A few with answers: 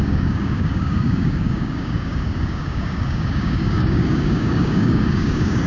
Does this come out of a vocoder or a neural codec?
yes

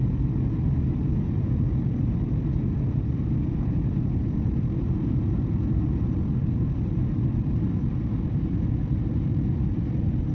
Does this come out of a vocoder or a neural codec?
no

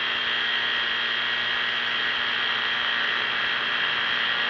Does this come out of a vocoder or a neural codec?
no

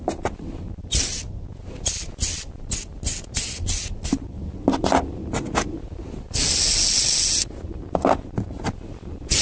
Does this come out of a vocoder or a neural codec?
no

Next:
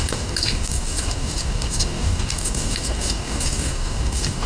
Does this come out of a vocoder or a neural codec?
yes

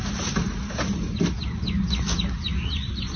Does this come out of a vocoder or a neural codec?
no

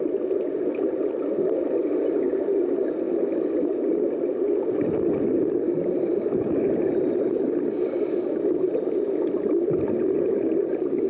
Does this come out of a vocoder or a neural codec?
no